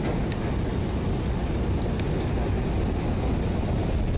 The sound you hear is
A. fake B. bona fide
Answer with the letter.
B